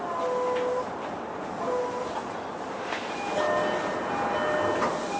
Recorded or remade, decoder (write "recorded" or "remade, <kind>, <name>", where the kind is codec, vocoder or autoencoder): recorded